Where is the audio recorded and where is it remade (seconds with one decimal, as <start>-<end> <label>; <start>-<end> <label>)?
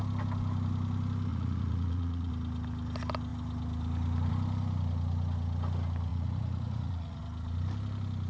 0.0-1.3 recorded; 1.3-2.3 remade; 2.3-6.1 recorded; 6.1-7.2 remade; 7.2-8.3 recorded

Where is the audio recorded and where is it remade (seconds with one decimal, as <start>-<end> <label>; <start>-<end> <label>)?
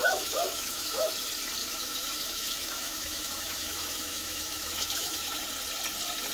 0.0-1.1 remade; 1.1-1.6 recorded; 1.6-5.4 remade; 5.4-6.3 recorded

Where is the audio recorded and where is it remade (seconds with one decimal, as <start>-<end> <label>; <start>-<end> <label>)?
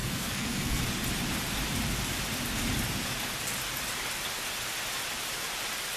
0.0-0.8 remade; 0.8-6.0 recorded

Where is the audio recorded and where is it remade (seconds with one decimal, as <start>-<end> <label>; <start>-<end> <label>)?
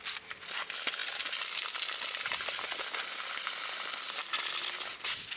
0.0-5.4 recorded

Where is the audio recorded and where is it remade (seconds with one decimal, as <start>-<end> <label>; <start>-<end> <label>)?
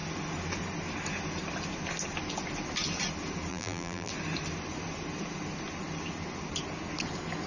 0.0-3.5 recorded; 3.5-4.1 remade; 4.1-7.5 recorded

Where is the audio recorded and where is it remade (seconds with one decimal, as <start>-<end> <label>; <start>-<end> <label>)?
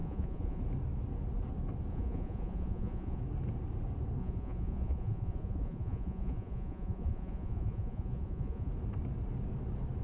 0.0-0.6 remade; 0.6-1.9 recorded; 1.9-3.2 remade; 3.2-4.2 recorded; 4.2-8.7 remade; 8.7-10.0 recorded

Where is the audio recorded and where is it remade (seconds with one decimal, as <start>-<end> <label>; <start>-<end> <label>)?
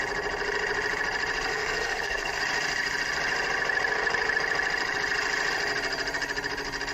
0.0-1.5 recorded; 1.5-2.4 remade; 2.4-6.9 recorded